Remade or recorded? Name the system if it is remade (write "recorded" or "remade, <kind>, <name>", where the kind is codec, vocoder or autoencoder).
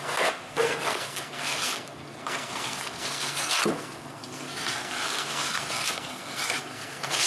remade, codec, SNAC